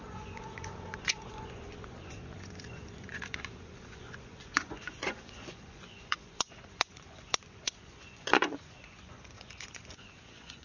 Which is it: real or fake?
fake